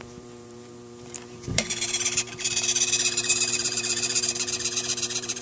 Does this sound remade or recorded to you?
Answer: remade